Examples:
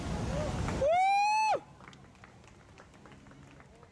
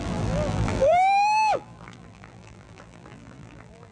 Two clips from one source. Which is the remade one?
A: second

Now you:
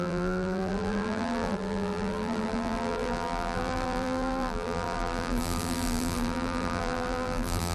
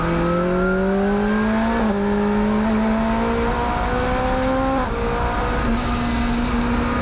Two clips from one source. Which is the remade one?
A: first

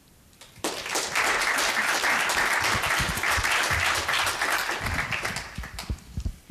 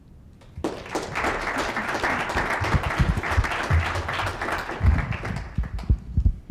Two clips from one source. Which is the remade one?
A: first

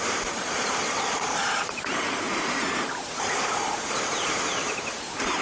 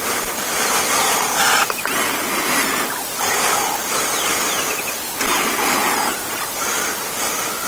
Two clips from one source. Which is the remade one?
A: first